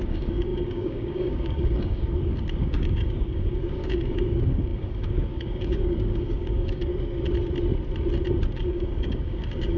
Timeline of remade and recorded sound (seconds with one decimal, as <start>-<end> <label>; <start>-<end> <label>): 0.0-6.9 remade; 6.9-8.6 recorded; 8.6-9.8 remade